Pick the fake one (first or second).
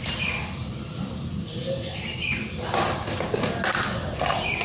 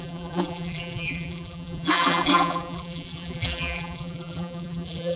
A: second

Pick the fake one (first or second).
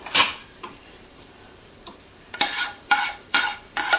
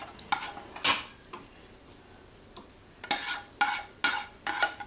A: first